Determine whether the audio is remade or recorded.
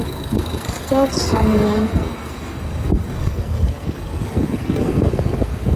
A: remade